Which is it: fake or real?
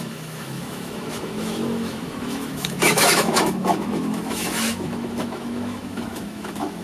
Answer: fake